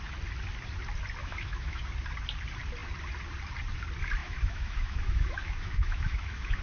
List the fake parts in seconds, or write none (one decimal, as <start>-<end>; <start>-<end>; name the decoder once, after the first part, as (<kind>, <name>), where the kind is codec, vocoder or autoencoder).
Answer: 1.2-1.8 (autoencoder, DAC-VAE); 4.2-6.6